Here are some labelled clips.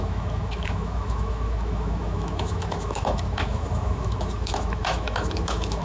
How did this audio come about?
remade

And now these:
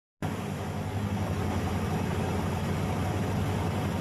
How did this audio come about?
recorded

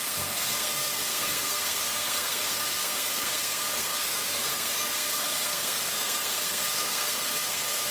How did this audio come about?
remade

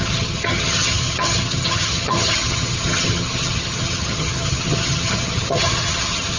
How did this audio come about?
remade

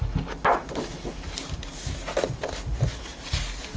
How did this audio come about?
recorded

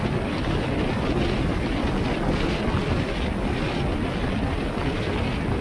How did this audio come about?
recorded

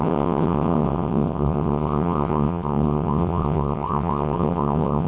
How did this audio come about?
remade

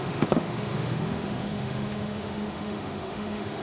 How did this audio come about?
remade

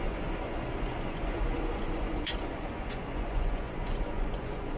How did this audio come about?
remade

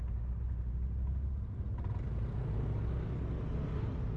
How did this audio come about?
recorded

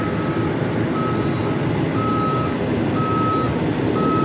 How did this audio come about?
recorded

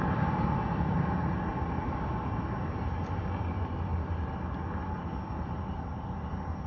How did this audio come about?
recorded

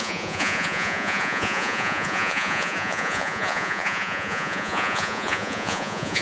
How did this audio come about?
remade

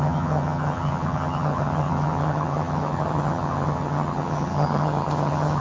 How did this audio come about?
remade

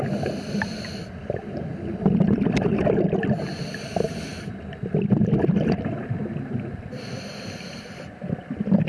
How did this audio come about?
remade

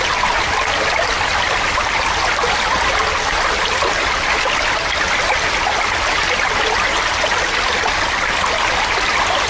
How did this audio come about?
recorded